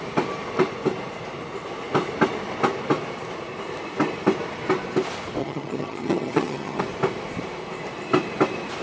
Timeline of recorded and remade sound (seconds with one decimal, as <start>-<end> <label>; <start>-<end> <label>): 0.0-5.4 recorded; 5.4-6.8 remade; 6.8-8.8 recorded